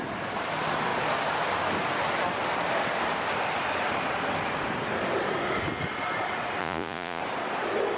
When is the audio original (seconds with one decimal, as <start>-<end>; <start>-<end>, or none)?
0.0-6.6; 7.2-8.0